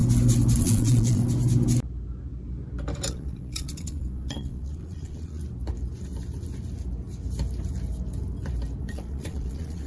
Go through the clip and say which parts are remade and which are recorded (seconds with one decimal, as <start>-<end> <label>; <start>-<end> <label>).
0.0-0.6 recorded; 0.6-1.2 remade; 1.2-3.1 recorded; 3.1-5.4 remade; 5.4-8.8 recorded; 8.8-9.9 remade